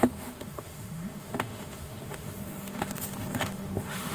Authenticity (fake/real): fake